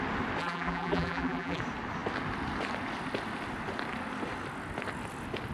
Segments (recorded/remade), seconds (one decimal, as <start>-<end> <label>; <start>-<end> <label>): 0.0-0.4 recorded; 0.4-1.6 remade; 1.6-5.5 recorded